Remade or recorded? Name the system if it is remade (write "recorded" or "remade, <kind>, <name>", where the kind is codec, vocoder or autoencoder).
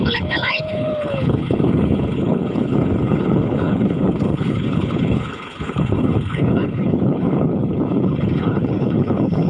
remade, codec, HILCodec